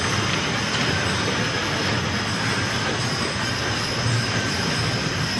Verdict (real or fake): real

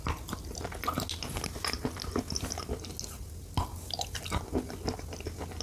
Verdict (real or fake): real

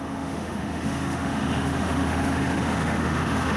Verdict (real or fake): fake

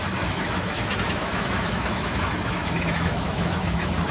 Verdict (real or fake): fake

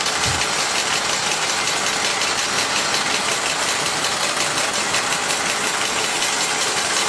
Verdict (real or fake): real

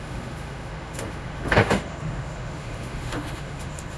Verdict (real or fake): fake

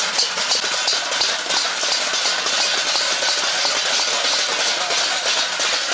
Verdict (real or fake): real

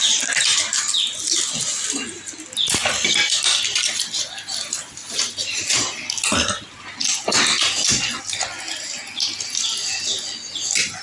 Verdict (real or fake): real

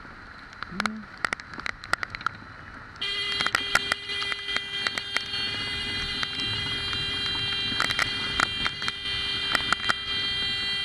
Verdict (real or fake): real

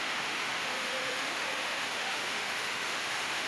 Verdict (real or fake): fake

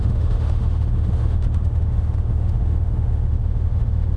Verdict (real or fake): fake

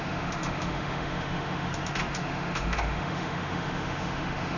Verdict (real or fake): fake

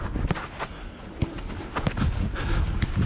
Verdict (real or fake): real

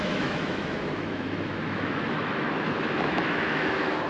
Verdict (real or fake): fake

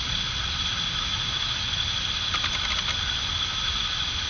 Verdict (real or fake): real